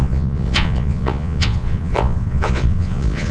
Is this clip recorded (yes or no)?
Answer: no